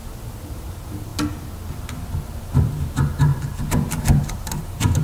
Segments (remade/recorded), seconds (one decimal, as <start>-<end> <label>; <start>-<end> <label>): 0.0-0.7 recorded; 0.7-1.1 remade; 1.1-2.3 recorded; 2.3-5.0 remade